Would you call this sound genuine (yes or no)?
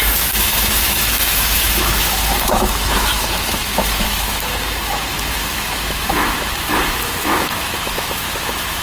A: no